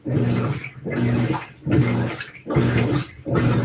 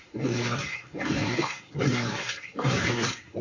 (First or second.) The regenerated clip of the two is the second